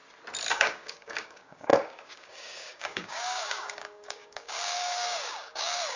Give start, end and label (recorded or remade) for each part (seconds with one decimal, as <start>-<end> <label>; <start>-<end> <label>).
0.0-0.5 recorded; 0.5-6.0 remade